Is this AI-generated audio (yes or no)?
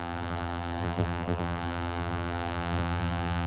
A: yes